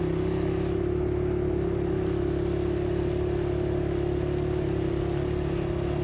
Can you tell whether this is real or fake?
real